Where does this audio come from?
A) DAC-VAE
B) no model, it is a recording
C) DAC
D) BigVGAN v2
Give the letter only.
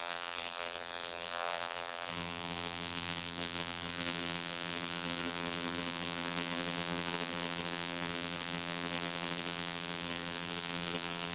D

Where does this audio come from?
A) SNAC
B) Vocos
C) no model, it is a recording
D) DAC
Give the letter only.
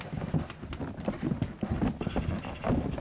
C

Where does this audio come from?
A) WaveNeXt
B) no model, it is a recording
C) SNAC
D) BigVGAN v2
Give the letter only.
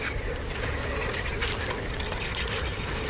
B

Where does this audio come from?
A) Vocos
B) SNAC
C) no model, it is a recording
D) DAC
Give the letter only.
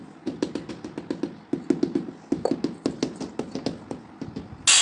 C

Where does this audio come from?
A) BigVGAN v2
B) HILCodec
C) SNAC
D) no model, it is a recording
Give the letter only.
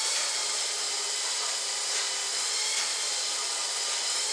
A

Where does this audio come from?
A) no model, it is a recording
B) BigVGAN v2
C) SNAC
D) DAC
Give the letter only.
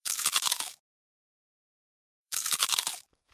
D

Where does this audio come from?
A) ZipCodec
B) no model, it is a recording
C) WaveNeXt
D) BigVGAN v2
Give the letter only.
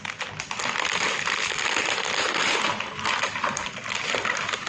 B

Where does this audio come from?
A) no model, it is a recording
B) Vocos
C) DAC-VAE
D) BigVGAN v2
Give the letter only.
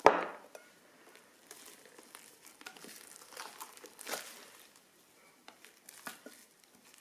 A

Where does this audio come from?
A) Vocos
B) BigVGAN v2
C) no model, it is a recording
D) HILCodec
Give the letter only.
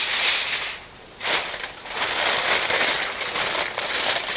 C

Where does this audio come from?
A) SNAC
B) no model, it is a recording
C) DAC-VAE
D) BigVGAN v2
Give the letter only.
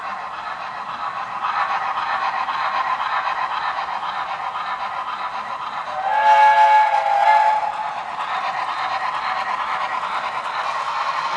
B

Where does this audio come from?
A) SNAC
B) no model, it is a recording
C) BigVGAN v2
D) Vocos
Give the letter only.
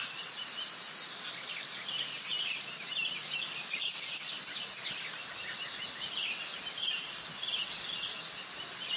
B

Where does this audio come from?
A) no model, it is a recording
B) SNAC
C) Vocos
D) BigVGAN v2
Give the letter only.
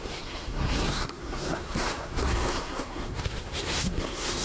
B